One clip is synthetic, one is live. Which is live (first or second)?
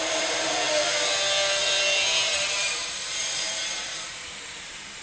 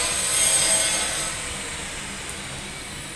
second